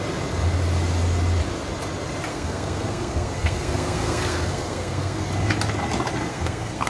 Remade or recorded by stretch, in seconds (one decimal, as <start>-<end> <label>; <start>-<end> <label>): 0.0-2.3 recorded; 2.3-5.3 remade; 5.3-6.3 recorded; 6.3-6.9 remade